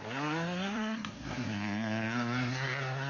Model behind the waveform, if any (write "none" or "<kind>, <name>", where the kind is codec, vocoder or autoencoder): codec, SNAC